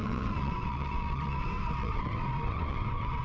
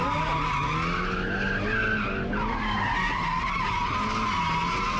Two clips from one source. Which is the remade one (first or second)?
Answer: first